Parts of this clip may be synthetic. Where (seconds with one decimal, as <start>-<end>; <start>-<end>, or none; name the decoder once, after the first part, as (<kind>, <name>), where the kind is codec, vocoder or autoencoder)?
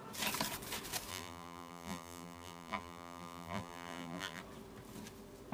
1.1-4.4 (vocoder, BigVGAN v2)